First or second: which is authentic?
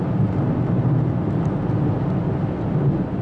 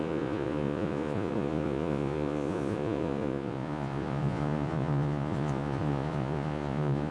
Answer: first